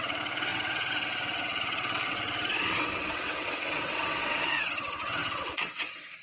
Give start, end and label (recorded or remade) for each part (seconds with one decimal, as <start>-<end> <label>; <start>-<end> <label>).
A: 0.0-6.2 remade